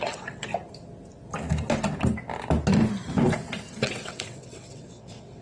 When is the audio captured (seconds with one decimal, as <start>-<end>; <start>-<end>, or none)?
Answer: 0.5-3.7